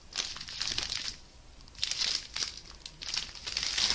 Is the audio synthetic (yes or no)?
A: no